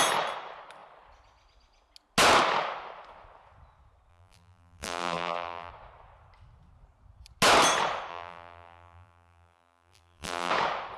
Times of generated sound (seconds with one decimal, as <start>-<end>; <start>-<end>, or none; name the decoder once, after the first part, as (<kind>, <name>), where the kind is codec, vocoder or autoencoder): 4.1-5.7 (vocoder, BigVGAN v2); 8.1-10.5

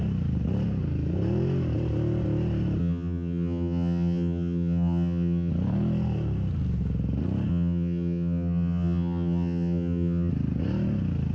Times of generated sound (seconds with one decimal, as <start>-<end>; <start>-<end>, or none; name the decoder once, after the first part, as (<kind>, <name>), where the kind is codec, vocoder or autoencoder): 2.8-5.5 (vocoder, HiFi-GAN); 7.5-10.3